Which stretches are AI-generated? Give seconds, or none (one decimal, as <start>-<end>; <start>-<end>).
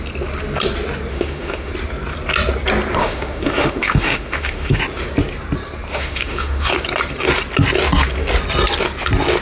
1.1-1.7; 3.0-4.8; 5.9-6.7